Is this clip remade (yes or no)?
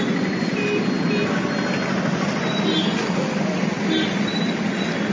no